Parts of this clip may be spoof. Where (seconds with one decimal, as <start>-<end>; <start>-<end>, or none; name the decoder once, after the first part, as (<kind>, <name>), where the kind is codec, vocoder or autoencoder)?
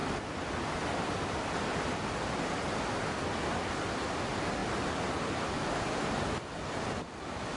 none